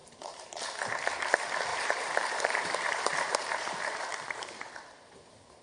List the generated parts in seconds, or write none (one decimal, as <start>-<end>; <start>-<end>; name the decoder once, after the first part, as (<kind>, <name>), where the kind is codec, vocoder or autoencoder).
0.0-0.8 (vocoder, BigVGAN v2); 1.7-5.1